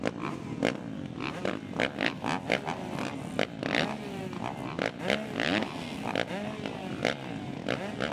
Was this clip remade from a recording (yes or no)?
no